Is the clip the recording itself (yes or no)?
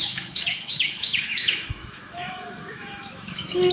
no